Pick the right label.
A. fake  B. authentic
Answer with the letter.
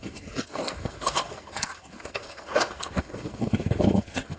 A